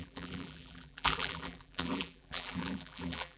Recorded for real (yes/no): no